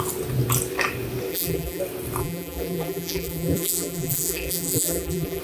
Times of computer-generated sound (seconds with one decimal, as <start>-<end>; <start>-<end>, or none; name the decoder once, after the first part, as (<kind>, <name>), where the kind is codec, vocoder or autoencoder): 1.3-1.8 (vocoder, BigVGAN v2); 2.2-5.4